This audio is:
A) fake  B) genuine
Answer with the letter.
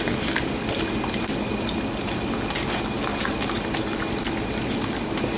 B